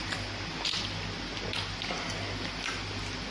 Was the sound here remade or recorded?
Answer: recorded